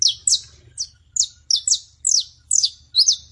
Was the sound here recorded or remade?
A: recorded